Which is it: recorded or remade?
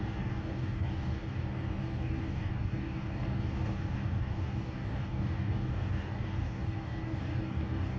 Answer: remade